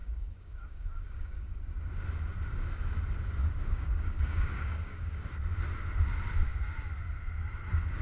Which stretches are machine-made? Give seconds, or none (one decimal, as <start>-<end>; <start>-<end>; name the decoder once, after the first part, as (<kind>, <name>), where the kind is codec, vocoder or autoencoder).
0.0-1.6 (codec, DAC); 3.4-5.2